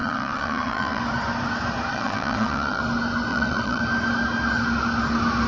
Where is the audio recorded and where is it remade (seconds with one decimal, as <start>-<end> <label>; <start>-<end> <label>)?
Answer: 0.0-1.0 remade; 1.0-1.9 recorded; 1.9-2.8 remade; 2.8-3.3 recorded; 3.3-3.8 remade; 3.8-5.5 recorded